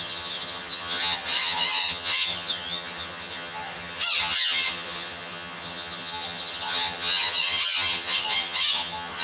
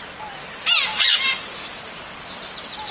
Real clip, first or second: second